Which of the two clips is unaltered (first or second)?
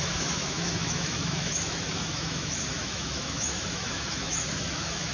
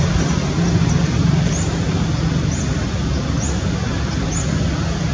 second